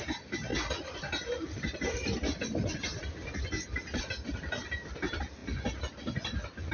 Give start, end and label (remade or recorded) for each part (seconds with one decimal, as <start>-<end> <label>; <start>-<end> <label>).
0.0-6.7 recorded